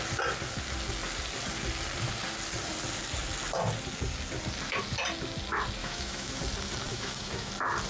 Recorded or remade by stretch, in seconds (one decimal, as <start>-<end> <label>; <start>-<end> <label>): 0.0-5.8 recorded; 5.8-6.4 remade; 6.4-6.9 recorded; 6.9-7.5 remade; 7.5-7.9 recorded